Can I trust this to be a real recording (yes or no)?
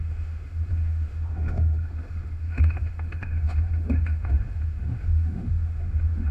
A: no